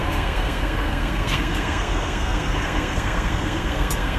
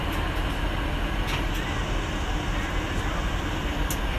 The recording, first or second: second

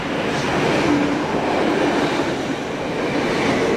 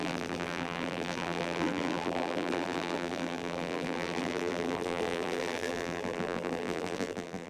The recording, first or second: first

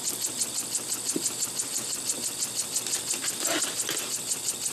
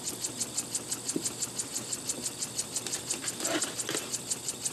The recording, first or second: first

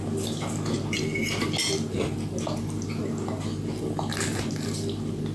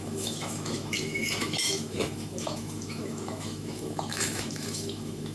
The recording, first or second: first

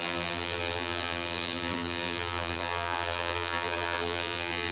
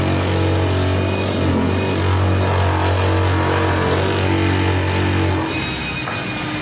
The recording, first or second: second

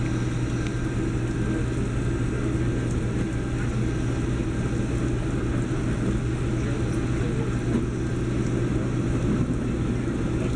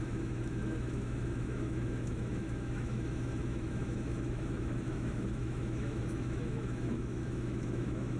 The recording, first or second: first